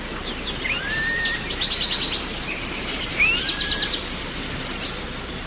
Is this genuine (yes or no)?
yes